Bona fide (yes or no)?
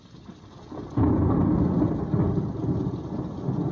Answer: yes